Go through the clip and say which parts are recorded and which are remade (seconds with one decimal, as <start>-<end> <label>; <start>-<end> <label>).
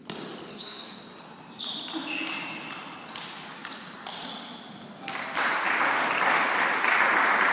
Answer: 0.0-0.5 recorded; 0.5-1.0 remade; 1.0-7.5 recorded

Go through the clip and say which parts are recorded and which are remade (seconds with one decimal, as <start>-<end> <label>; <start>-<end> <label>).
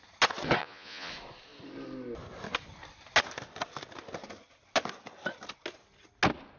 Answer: 0.0-0.6 recorded; 0.6-1.1 remade; 1.1-6.6 recorded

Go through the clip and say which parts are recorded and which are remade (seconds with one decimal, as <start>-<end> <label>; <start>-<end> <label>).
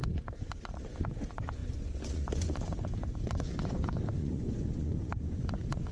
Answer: 0.0-5.9 remade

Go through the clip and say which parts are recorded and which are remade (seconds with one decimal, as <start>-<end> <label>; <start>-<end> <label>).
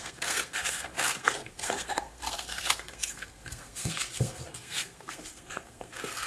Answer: 0.0-6.3 remade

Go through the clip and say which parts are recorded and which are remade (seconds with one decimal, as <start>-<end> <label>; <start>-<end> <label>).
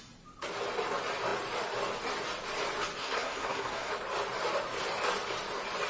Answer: 0.0-3.0 recorded; 3.0-3.9 remade; 3.9-5.9 recorded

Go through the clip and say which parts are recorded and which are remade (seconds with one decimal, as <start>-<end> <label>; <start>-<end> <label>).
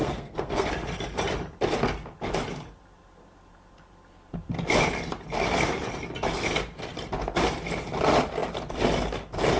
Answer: 0.0-0.7 remade; 0.7-9.6 recorded